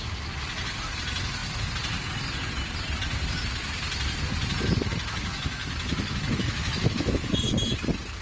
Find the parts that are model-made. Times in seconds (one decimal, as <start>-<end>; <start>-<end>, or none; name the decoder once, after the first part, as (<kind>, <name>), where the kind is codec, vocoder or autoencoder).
4.8-7.3 (autoencoder, DAC-VAE)